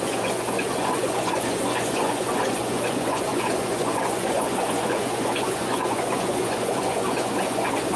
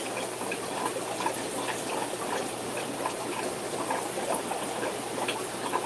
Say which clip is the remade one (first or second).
first